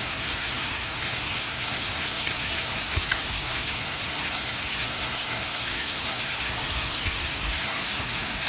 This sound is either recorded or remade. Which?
remade